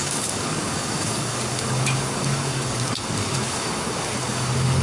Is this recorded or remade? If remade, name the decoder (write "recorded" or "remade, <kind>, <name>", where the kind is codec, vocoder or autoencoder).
remade, codec, DAC